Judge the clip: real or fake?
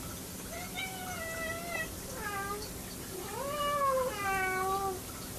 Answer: real